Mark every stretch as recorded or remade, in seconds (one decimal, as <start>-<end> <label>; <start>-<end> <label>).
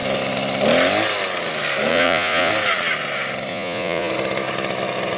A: 0.0-1.9 recorded; 1.9-2.5 remade; 2.5-3.5 recorded; 3.5-4.1 remade; 4.1-5.2 recorded